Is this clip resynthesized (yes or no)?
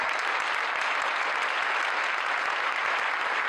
no